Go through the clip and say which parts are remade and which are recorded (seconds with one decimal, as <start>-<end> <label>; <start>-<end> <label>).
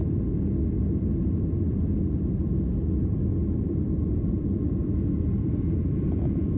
0.0-4.0 recorded; 4.0-4.8 remade; 4.8-5.4 recorded; 5.4-6.6 remade